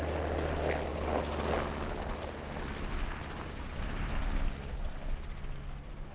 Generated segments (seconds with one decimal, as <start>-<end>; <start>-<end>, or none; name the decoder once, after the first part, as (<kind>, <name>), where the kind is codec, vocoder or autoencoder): none